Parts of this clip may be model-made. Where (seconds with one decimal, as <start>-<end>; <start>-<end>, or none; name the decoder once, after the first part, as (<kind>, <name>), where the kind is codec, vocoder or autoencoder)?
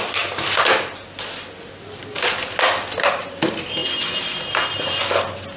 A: none